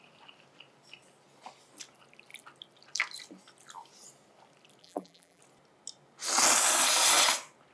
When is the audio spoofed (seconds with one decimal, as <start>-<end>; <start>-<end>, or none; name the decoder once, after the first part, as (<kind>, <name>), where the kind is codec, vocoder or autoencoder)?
4.8-5.4 (vocoder, BigVGAN v2)